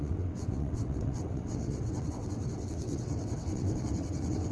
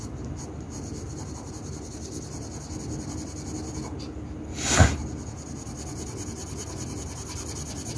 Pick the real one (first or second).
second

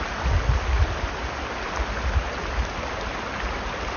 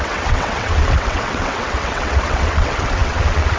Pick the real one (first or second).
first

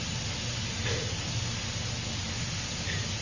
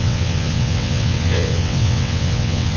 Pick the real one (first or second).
first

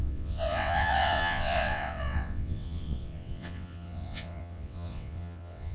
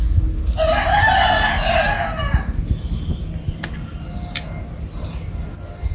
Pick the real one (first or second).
second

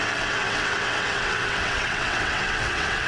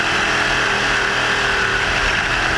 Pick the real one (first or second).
second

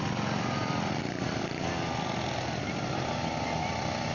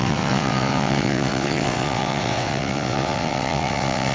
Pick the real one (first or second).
first